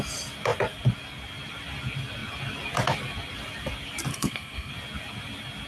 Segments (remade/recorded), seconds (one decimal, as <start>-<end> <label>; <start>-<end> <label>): 0.0-4.1 recorded; 4.1-4.7 remade; 4.7-5.7 recorded